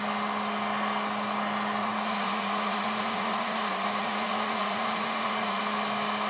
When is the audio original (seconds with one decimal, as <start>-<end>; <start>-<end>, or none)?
0.0-1.8; 5.6-6.3

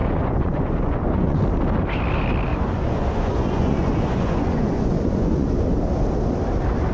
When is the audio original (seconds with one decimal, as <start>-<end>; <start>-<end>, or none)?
1.4-2.5; 5.6-6.9

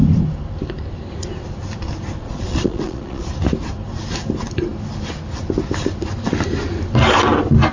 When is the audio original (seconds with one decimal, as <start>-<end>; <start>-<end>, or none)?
0.0-2.2; 3.3-7.7

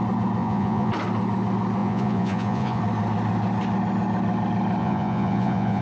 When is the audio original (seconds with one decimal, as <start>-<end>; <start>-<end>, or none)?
0.0-0.4; 0.9-1.8; 2.8-4.8

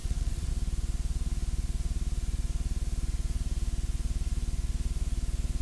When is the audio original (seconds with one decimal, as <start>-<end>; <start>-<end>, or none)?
0.5-5.6

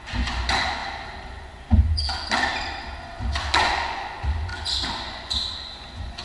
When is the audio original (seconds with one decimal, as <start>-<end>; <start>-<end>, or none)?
0.8-1.3; 2.0-3.6

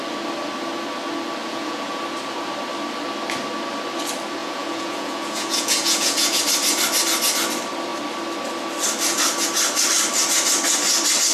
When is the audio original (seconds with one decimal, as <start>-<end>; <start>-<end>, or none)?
0.0-1.4; 2.0-4.4; 6.4-11.3